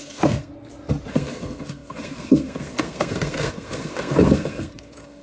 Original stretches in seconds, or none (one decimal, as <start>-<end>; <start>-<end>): 0.5-1.1